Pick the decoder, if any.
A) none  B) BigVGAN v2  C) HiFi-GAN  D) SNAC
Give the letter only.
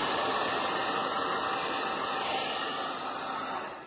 A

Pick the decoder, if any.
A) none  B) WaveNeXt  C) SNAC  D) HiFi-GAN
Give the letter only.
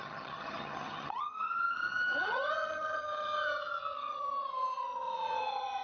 D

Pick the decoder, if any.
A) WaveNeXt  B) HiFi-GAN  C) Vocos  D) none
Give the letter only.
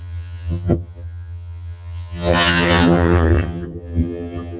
B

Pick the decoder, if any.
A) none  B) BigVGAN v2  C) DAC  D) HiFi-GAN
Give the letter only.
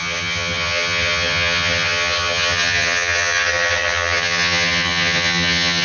D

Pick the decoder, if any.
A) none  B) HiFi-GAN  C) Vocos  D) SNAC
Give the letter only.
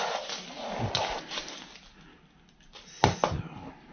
A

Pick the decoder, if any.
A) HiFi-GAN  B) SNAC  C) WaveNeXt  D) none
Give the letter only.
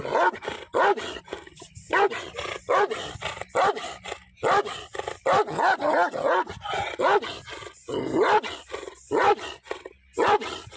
D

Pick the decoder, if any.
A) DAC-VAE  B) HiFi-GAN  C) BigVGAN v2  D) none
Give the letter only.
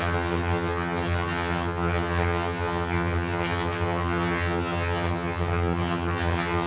B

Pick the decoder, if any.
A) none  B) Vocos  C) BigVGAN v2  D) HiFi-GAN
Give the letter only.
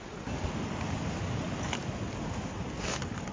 A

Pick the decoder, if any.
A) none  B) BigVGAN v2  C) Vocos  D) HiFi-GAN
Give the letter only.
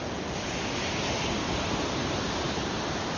A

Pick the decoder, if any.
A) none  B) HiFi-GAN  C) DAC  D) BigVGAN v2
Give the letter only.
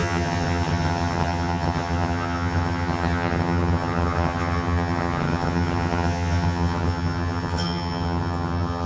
B